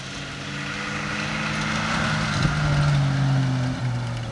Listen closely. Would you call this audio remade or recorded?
recorded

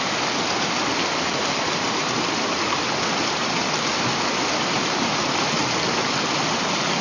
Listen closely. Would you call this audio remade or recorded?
recorded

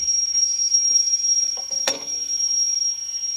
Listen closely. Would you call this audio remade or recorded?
remade